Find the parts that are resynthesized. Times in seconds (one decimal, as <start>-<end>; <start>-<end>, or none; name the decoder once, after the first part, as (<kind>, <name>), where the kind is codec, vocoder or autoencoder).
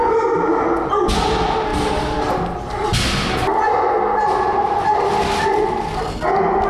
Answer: none